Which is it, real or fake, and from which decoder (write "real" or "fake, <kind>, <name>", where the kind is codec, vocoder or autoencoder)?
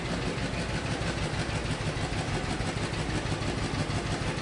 real